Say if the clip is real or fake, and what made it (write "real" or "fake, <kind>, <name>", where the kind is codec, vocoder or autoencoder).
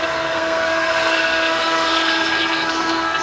fake, codec, SNAC